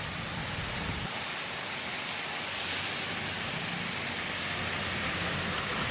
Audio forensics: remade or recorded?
recorded